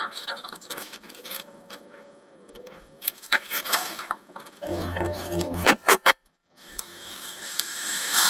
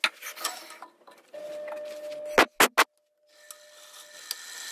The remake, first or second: first